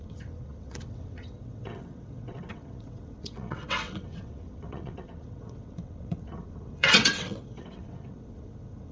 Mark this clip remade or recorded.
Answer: remade